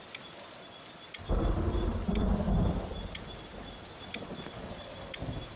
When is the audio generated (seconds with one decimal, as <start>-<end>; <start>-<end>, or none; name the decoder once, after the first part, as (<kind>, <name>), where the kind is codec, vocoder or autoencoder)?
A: 1.9-3.6 (vocoder, BigVGAN v2)